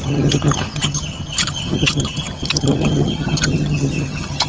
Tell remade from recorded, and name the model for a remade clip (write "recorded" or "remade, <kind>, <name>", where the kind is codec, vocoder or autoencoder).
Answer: remade, vocoder, HiFi-GAN